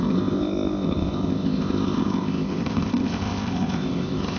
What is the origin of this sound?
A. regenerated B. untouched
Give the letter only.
A